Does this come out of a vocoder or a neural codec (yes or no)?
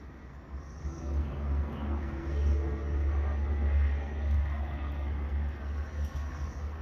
yes